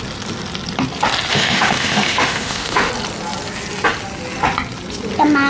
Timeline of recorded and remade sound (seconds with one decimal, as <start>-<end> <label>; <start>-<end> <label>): 0.0-1.3 recorded; 1.3-2.9 remade; 2.9-5.5 recorded